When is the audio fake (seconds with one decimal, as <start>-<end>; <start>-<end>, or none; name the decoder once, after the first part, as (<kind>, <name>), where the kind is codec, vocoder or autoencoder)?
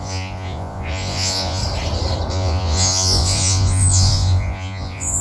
0.0-1.6 (vocoder, Vocos); 2.3-5.2